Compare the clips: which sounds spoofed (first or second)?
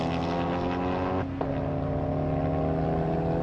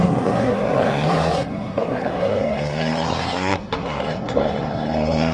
second